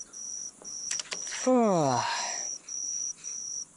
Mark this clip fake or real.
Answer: fake